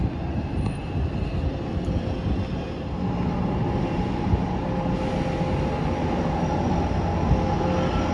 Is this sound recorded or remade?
recorded